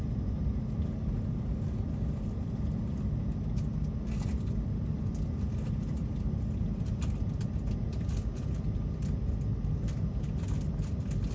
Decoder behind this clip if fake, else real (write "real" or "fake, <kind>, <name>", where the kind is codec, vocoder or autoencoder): real